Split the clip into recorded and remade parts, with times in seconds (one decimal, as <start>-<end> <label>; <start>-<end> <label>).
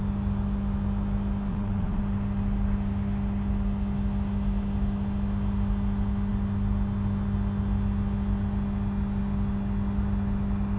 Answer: 0.0-1.5 recorded; 1.5-2.0 remade; 2.0-10.8 recorded